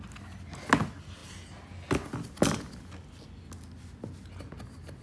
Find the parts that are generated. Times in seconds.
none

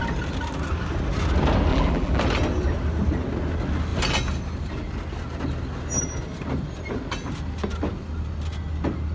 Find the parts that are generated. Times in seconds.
1.7-2.2 (vocoder, BigVGAN v2)

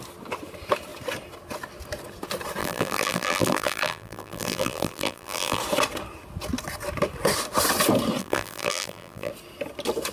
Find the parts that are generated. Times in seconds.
2.6-5.6 (vocoder, BigVGAN v2); 8.2-9.3

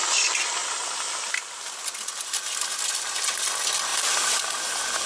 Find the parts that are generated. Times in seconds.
0.6-1.4 (vocoder, BigVGAN v2); 3.9-4.4

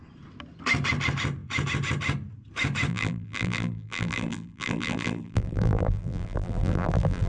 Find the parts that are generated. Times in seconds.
2.9-7.3 (vocoder, BigVGAN v2)

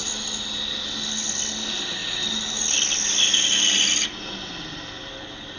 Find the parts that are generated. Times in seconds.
none

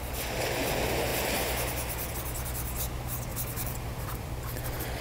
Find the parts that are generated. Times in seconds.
3.3-4.3 (vocoder, BigVGAN v2)